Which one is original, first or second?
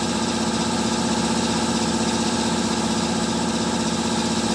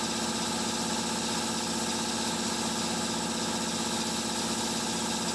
second